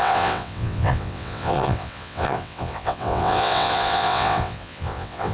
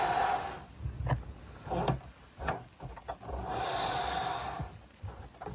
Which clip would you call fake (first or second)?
first